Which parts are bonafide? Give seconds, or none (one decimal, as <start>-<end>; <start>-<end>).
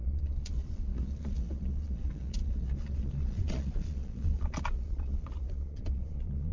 none